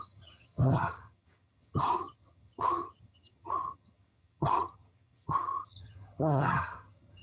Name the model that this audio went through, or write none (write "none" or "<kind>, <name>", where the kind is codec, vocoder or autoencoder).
vocoder, HiFi-GAN